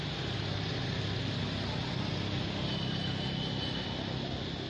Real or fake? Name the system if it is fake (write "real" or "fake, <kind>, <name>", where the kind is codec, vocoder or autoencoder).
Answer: real